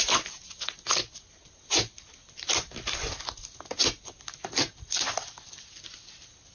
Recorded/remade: recorded